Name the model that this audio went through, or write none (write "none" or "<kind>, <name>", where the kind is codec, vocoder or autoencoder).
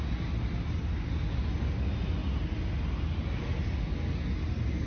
none